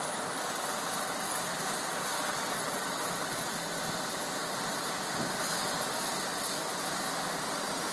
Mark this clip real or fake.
real